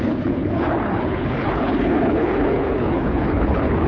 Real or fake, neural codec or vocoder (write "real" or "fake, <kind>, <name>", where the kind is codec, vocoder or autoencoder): fake, codec, HILCodec